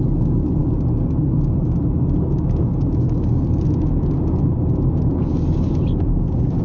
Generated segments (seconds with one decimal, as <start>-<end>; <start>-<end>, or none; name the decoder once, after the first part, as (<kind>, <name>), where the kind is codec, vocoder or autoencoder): none